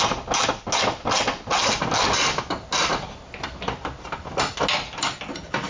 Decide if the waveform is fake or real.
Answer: real